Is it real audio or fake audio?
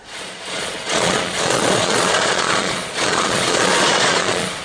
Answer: fake